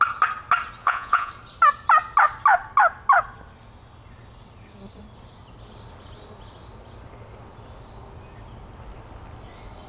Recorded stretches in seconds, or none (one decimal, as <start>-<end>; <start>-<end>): 0.0-0.8; 1.3-9.9

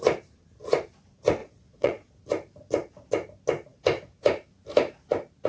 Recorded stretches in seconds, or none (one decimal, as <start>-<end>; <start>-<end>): 0.0-1.4; 2.1-5.5

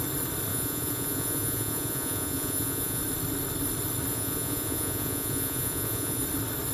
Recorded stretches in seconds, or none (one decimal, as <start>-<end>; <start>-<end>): 0.0-0.5; 3.0-4.1; 6.2-6.7

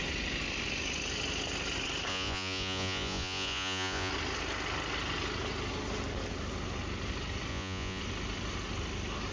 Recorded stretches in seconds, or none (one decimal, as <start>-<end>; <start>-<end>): 0.0-2.1; 4.1-7.5; 8.0-9.3

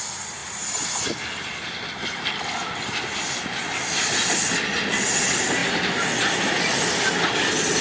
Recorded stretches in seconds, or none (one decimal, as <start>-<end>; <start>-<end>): 0.0-7.8